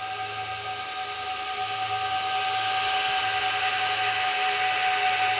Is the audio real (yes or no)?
yes